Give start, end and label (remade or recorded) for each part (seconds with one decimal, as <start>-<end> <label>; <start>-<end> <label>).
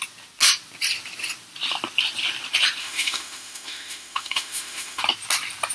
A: 0.0-2.8 recorded; 2.8-5.0 remade; 5.0-5.7 recorded